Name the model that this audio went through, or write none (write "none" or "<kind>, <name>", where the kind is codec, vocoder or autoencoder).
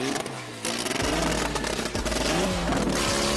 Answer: none